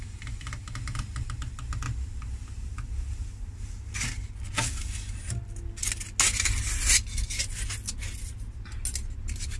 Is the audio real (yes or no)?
yes